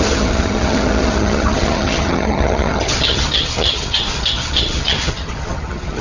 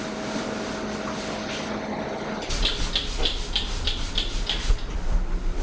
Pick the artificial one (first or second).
first